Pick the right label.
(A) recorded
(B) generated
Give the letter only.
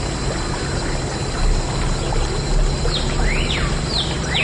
A